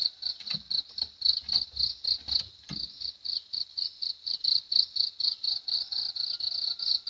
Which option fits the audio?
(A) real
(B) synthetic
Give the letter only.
A